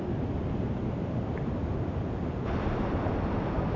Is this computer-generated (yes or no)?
no